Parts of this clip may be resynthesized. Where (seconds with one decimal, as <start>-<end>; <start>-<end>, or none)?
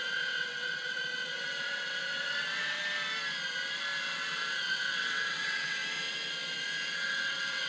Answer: 0.0-2.8; 4.0-5.8; 6.9-7.7